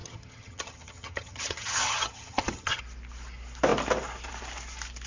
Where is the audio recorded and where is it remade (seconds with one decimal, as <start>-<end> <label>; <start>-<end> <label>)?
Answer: 0.0-2.8 remade; 2.8-5.1 recorded